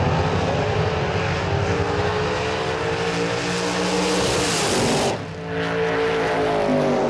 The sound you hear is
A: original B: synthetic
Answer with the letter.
A